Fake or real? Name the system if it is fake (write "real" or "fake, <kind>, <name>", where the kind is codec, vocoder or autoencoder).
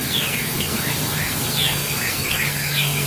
fake, codec, SNAC